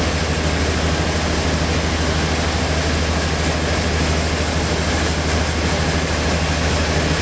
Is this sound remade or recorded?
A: recorded